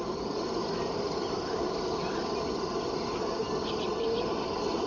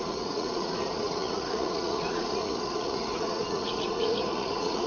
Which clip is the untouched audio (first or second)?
first